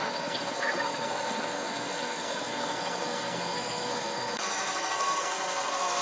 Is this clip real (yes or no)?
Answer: no